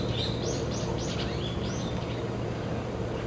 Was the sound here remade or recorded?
recorded